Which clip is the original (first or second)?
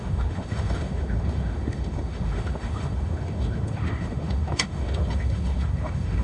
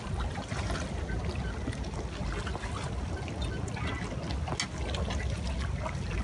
second